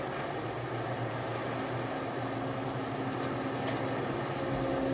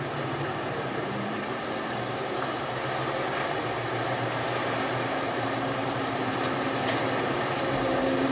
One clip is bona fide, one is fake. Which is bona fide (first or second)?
first